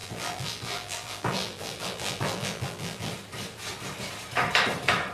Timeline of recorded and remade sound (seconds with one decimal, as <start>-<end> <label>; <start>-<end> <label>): 0.0-3.1 remade; 3.1-5.1 recorded

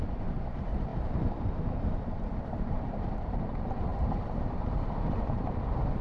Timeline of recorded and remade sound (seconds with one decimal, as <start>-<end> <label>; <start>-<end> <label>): 0.0-6.0 remade

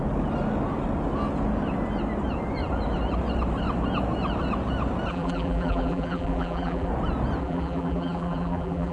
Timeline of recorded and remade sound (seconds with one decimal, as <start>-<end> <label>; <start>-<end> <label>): 0.0-5.1 recorded; 5.1-6.9 remade; 6.9-7.4 recorded; 7.4-8.9 remade

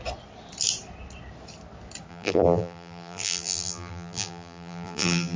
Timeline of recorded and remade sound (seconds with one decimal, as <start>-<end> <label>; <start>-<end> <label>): 0.0-2.1 recorded; 2.1-5.4 remade